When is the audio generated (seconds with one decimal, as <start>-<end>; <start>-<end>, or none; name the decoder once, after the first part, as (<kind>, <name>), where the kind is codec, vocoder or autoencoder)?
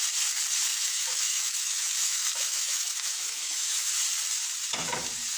0.7-3.9 (autoencoder, DAC-VAE)